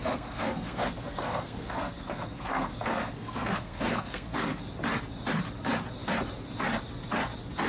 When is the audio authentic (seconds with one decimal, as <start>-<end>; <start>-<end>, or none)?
4.6-7.7